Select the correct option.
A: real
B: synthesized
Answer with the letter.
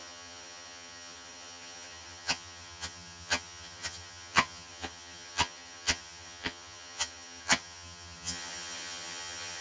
B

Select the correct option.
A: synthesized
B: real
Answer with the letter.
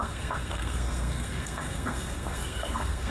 A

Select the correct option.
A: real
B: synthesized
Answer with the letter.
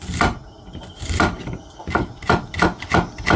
A